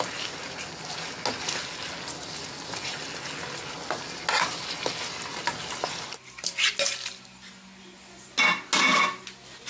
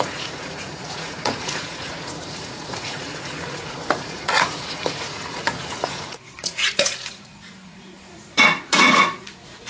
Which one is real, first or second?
first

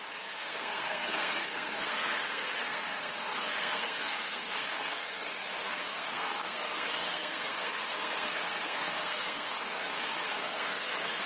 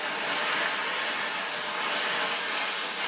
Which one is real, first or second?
second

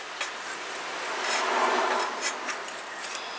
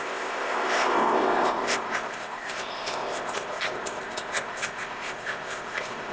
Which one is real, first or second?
first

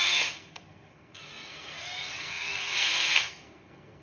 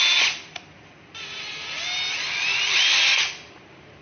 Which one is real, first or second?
second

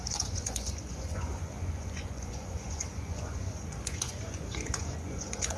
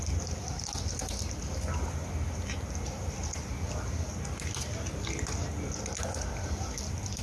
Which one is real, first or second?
second